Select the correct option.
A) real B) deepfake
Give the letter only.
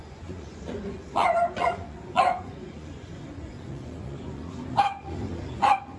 B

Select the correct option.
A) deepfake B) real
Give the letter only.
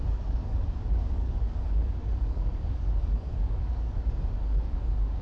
A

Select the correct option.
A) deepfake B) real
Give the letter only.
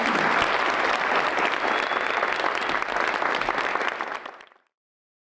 B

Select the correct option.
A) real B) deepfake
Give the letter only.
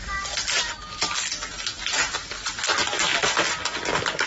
A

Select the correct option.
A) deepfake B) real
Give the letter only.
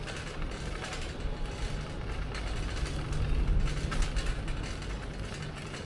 B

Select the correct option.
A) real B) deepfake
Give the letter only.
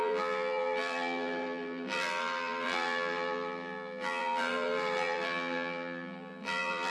B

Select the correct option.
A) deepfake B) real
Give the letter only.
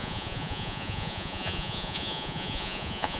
A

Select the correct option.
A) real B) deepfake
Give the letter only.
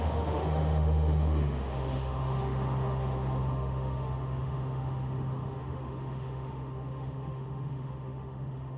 B